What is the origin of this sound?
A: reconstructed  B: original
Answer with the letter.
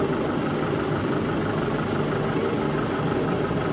B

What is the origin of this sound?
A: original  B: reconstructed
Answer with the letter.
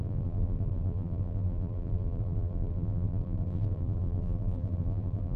B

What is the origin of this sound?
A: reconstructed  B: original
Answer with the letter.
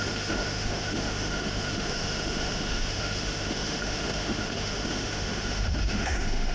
A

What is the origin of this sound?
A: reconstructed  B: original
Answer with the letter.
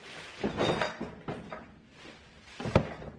B